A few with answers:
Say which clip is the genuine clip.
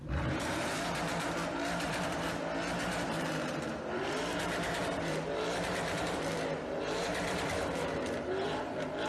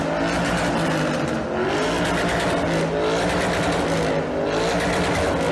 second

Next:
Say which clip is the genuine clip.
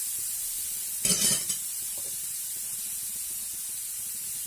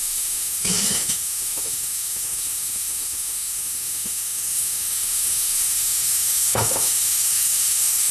first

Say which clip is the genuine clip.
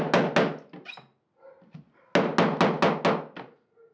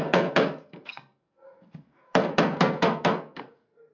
first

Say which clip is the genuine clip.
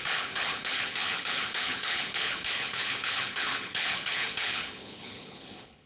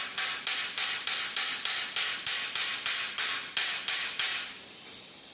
second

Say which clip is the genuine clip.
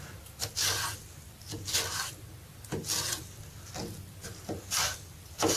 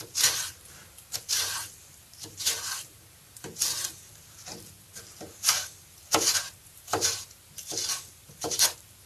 first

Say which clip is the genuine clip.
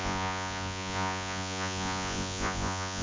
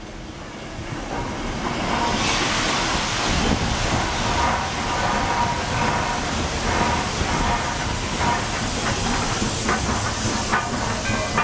second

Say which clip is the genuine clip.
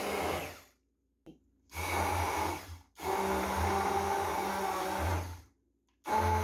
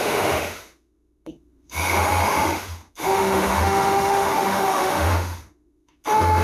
first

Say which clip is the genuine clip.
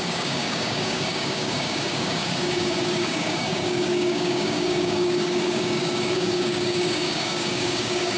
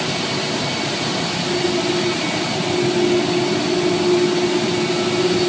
second